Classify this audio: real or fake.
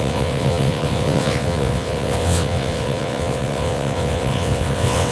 fake